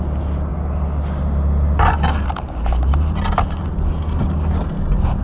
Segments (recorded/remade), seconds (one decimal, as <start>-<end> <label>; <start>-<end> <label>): 0.0-5.2 recorded